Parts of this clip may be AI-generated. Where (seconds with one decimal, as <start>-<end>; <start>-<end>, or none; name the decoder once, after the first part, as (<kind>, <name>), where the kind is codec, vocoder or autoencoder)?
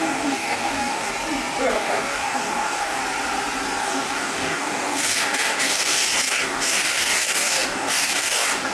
0.0-1.1 (codec, DAC); 1.7-3.0; 3.8-8.7